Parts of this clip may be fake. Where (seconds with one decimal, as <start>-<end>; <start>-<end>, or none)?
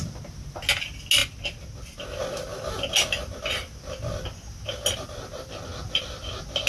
none